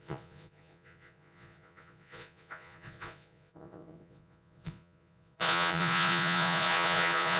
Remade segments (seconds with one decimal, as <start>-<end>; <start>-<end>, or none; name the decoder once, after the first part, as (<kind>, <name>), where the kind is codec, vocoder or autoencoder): 0.0-7.4 (vocoder, Vocos)